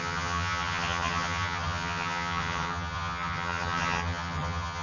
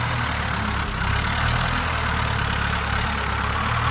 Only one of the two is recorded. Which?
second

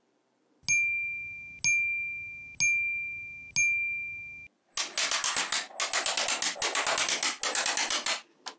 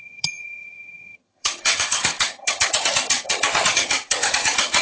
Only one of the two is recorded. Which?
first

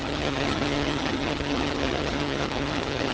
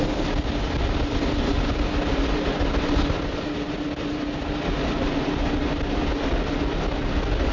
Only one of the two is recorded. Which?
second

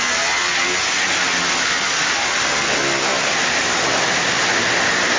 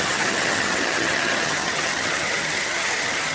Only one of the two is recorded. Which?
first